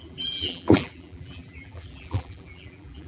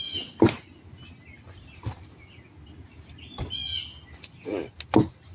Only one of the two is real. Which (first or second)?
second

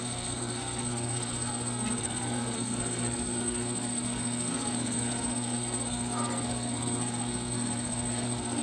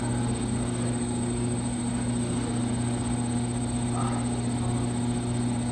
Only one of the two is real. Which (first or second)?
second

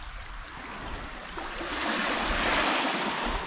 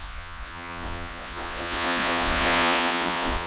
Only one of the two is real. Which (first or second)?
first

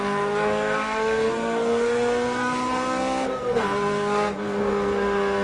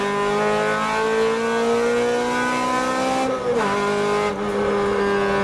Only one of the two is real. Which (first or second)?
second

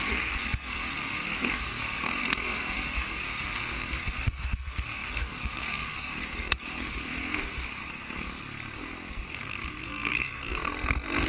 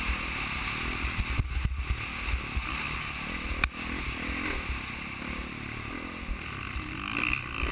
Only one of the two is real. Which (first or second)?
second